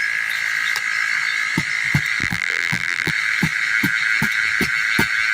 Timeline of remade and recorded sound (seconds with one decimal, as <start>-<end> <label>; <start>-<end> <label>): 0.0-2.2 recorded; 2.2-3.1 remade; 3.1-5.3 recorded